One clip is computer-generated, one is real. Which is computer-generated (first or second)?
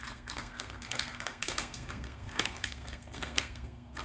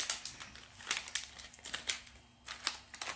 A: first